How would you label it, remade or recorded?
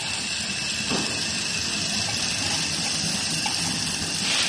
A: recorded